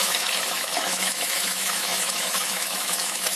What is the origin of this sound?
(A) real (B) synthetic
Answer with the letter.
B